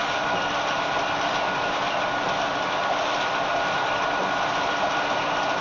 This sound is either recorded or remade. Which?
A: recorded